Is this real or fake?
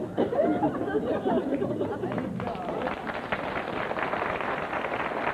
real